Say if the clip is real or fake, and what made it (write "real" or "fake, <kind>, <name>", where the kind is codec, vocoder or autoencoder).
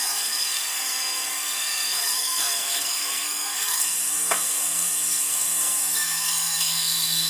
fake, codec, SNAC